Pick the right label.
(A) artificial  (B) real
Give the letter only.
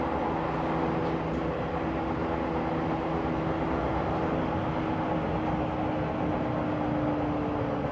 B